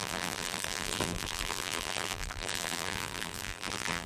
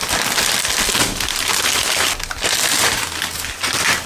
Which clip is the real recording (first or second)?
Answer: second